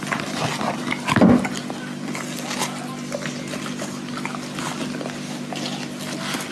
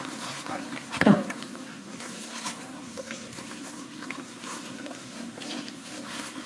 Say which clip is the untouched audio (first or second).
first